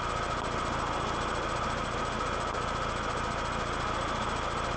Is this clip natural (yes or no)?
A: yes